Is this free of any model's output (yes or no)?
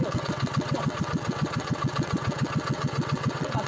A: no